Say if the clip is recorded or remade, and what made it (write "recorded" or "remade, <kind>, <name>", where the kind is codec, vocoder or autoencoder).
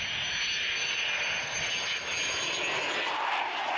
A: recorded